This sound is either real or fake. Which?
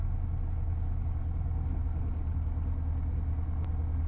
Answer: real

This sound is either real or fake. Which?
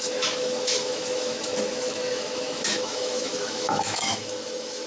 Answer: fake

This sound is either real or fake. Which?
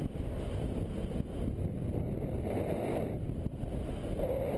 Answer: real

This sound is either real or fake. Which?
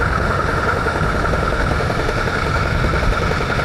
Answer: fake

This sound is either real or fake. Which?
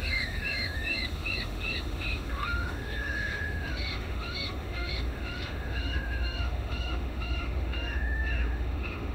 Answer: fake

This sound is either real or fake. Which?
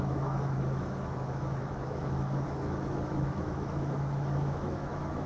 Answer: fake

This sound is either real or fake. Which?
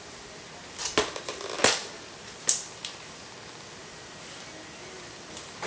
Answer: real